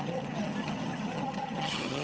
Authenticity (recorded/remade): remade